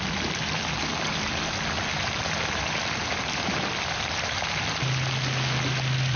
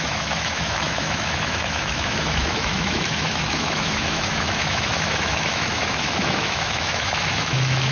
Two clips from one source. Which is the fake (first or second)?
second